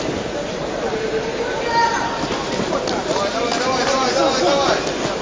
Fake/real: real